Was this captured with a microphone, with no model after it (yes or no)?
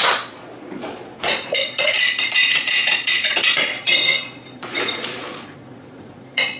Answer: no